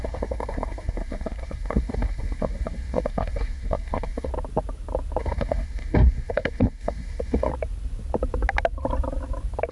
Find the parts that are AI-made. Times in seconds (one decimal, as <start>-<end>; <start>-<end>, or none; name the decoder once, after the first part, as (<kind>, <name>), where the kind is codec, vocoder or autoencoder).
0.0-4.3 (codec, SNAC); 5.2-7.5